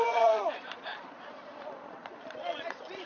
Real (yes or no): no